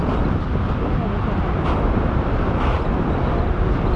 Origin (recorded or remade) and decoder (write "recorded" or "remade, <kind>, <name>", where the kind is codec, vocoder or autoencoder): recorded